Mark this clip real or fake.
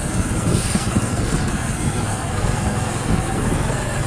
fake